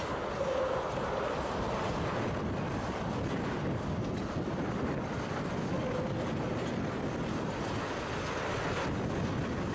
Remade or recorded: recorded